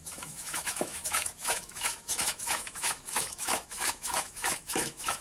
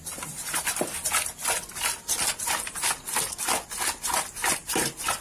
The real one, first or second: second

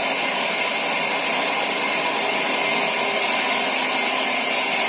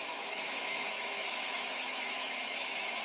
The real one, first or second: first